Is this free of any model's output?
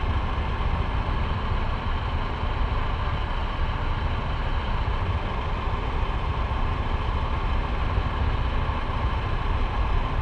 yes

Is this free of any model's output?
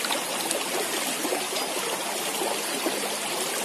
no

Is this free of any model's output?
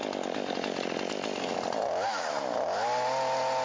yes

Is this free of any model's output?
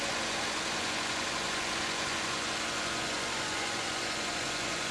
no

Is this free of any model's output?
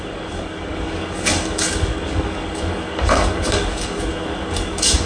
no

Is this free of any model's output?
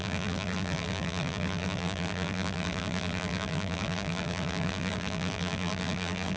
no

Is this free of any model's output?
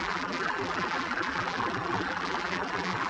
no